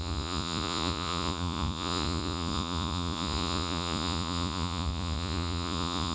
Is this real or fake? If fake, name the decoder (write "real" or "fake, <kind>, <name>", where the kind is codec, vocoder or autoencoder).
fake, vocoder, Vocos